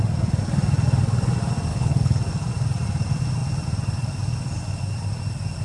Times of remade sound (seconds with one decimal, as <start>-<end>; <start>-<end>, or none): 1.7-2.2